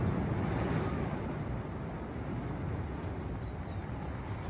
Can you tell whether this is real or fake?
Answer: real